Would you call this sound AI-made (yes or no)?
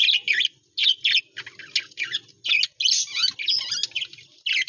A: no